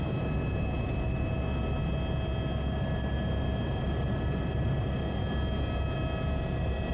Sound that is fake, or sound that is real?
real